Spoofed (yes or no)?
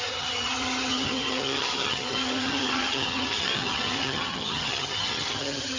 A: yes